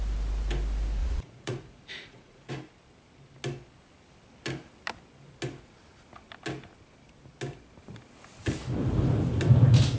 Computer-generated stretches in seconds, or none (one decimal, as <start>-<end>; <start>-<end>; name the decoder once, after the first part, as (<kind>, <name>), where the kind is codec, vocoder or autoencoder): 1.0-2.5 (vocoder, Vocos)